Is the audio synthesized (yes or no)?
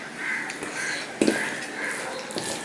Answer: no